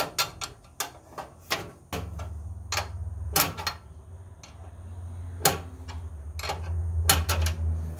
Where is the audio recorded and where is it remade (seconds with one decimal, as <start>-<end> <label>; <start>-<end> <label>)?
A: 0.0-8.0 recorded